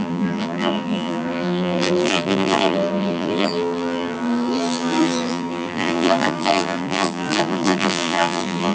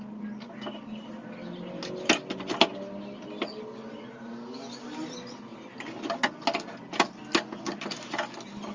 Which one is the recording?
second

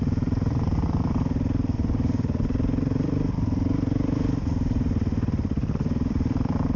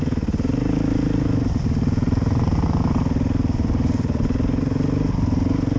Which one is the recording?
second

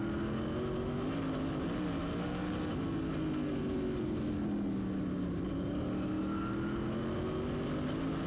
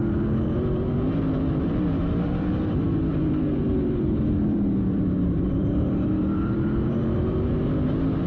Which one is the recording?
first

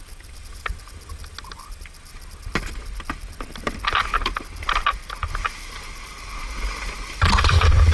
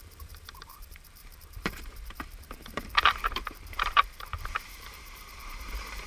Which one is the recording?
first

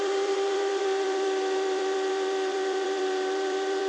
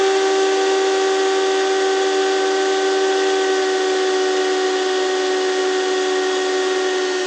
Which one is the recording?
second